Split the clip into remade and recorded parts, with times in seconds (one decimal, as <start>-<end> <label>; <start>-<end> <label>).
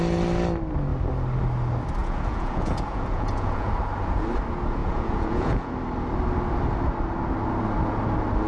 0.0-2.0 recorded; 2.0-3.7 remade; 3.7-4.8 recorded; 4.8-5.7 remade; 5.7-8.5 recorded